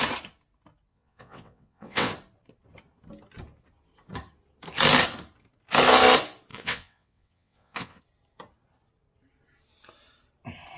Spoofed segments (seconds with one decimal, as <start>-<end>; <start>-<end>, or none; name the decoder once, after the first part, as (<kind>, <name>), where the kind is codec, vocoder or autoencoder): 0.9-2.1 (vocoder, WaveNeXt); 6.5-8.0